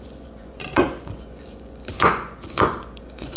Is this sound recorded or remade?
remade